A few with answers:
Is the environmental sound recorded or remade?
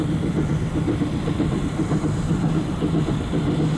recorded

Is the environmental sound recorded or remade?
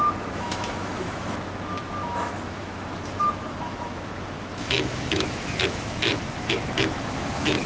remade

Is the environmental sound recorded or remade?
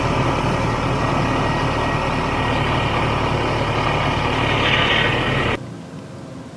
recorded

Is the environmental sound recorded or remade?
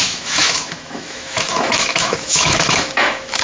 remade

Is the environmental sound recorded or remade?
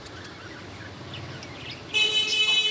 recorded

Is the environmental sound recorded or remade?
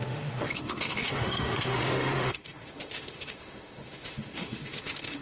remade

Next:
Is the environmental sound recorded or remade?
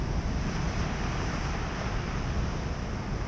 recorded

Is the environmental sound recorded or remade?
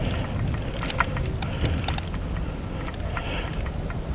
recorded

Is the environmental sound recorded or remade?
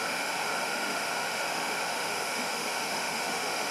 remade